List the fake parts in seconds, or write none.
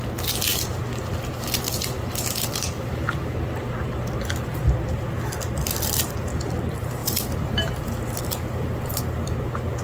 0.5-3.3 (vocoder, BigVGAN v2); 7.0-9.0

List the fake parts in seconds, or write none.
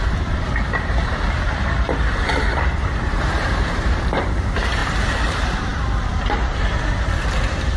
0.0-7.8 (vocoder, BigVGAN v2)